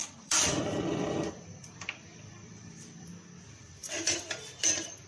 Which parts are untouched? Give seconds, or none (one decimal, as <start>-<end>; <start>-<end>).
3.1-3.8